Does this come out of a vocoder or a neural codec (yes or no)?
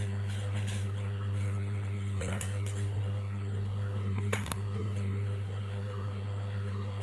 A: yes